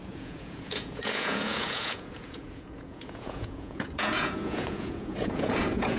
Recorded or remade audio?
remade